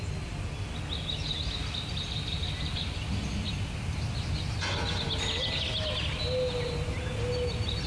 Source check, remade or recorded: recorded